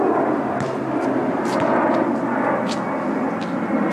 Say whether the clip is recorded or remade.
recorded